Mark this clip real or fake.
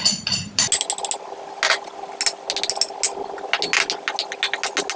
real